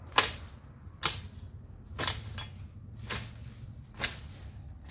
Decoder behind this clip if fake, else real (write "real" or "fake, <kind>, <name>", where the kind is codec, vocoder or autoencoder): real